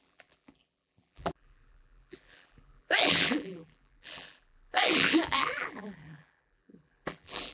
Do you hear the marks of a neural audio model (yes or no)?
yes